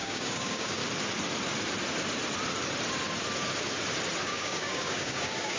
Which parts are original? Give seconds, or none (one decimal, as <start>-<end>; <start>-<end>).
0.8-4.2